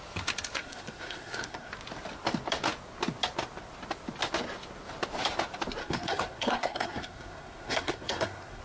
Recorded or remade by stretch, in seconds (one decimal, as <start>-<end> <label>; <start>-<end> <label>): 0.0-0.6 recorded; 0.6-1.7 remade; 1.7-5.8 recorded; 5.8-8.6 remade